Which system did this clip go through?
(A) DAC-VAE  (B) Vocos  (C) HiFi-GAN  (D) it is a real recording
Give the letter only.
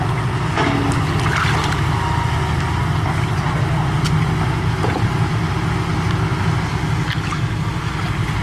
D